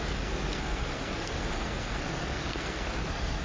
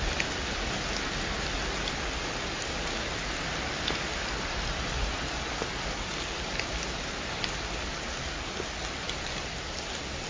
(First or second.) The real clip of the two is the second